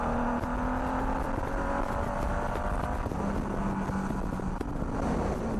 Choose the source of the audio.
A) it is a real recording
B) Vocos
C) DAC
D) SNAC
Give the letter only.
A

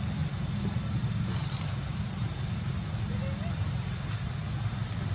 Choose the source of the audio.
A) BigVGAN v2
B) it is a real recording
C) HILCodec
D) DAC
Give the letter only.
B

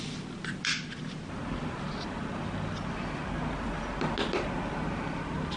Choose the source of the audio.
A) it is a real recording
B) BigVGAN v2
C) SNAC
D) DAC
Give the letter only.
A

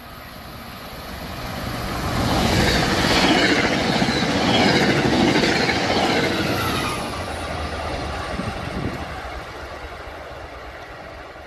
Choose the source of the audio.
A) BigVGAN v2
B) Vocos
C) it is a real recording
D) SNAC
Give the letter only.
B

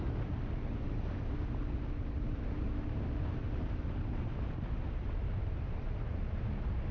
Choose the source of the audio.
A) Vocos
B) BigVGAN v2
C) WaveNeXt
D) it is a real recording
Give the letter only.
D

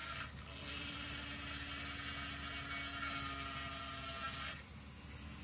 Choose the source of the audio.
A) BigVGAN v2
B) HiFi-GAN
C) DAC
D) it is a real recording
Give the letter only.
D